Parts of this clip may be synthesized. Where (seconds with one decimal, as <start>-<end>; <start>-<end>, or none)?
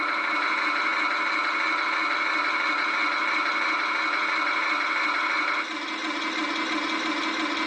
none